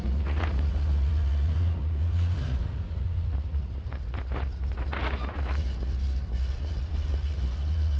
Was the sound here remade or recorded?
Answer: remade